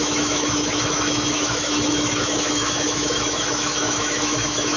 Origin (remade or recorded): remade